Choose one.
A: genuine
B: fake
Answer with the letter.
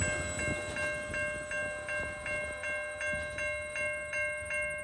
A